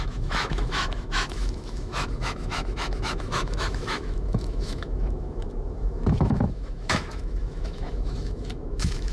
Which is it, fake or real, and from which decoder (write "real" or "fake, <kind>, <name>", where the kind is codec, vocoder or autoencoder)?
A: fake, autoencoder, DAC-VAE